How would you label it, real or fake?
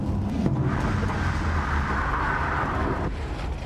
real